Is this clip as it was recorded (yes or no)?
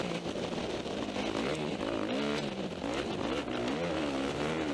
yes